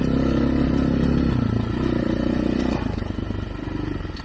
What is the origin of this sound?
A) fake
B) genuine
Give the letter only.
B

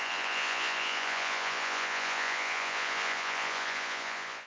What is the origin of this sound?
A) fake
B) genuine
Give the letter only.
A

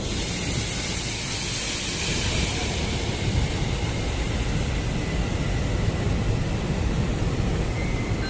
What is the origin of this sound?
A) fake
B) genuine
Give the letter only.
B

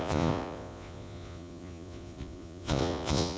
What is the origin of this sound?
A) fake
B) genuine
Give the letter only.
A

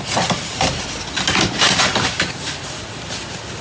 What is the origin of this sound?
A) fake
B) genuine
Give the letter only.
B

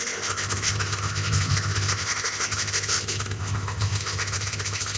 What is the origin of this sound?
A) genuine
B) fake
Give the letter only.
B